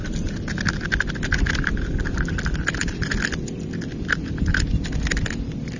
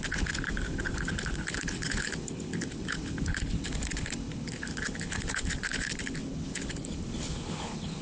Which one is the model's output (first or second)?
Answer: second